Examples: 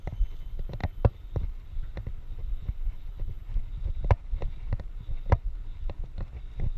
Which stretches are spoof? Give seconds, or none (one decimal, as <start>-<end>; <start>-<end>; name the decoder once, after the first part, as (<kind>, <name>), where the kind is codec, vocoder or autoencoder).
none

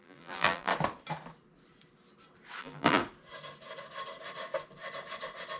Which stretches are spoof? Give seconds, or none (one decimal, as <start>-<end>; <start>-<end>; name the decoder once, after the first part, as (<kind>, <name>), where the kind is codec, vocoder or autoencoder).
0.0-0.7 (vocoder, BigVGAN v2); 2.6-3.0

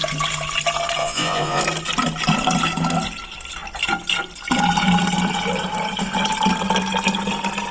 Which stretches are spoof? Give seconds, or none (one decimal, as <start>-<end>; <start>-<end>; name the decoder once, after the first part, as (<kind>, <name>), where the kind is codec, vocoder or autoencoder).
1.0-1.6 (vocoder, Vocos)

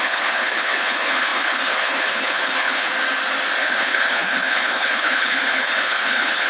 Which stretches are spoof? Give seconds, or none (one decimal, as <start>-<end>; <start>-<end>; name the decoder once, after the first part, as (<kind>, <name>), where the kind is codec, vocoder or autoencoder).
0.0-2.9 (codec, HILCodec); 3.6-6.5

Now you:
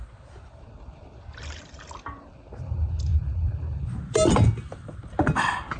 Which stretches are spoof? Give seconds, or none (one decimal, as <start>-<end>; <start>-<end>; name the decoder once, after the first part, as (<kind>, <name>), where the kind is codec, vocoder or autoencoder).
none

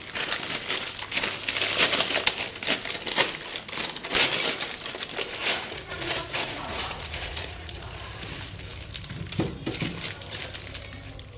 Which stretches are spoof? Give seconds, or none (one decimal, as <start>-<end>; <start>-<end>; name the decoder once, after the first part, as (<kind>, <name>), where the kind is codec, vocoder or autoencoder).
5.4-8.0 (vocoder, Vocos)

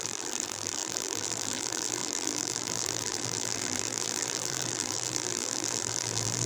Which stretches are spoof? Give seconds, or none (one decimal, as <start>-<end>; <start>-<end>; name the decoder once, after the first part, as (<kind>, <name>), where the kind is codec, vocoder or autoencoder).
0.0-6.5 (vocoder, BigVGAN v2)

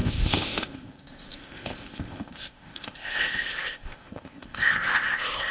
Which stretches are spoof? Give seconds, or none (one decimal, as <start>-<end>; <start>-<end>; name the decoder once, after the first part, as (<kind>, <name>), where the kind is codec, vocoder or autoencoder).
0.0-5.5 (codec, ZipCodec)